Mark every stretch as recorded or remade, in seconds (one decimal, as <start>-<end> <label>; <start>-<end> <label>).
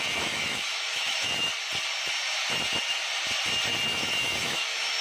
0.0-1.5 remade; 1.5-3.9 recorded; 3.9-5.0 remade